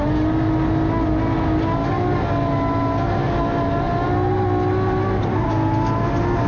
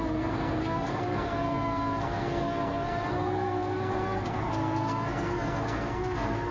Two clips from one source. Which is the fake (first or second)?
second